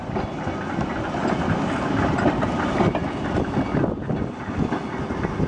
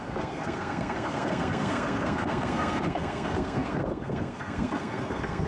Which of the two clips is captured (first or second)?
first